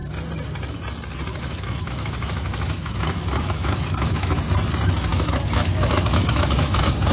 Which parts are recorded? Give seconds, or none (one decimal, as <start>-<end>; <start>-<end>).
0.0-1.3; 4.4-5.1